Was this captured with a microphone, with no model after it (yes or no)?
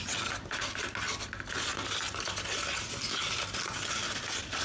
yes